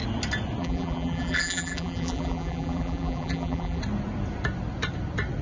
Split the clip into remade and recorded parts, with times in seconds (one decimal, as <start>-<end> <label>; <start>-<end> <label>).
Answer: 0.0-0.6 recorded; 0.6-3.8 remade; 3.8-5.4 recorded